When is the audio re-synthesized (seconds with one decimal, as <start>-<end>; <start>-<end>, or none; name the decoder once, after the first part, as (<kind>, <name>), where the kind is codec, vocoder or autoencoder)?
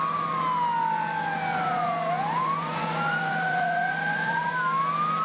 1.5-4.5 (vocoder, Vocos)